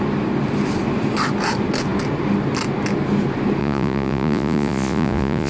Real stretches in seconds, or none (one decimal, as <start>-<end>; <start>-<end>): 0.0-3.6